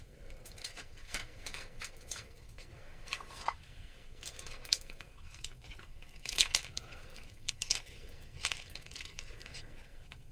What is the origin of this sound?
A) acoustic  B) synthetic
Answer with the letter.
B